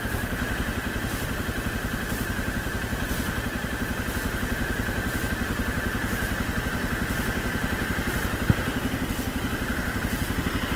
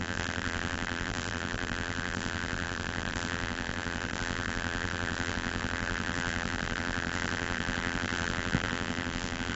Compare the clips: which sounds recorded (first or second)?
first